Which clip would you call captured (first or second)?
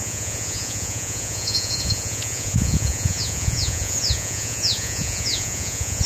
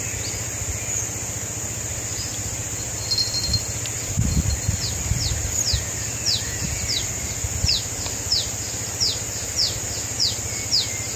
second